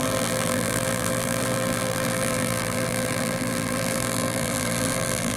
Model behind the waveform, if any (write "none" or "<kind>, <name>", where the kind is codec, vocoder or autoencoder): vocoder, BigVGAN v2